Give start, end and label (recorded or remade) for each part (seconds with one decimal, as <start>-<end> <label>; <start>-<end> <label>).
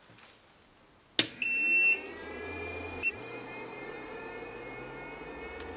0.0-2.2 recorded; 2.2-4.2 remade; 4.2-5.8 recorded